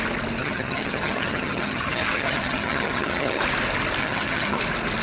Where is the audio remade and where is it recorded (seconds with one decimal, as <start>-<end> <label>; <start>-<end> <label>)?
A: 0.0-0.4 recorded; 0.4-3.4 remade; 3.4-4.0 recorded; 4.0-4.6 remade; 4.6-5.0 recorded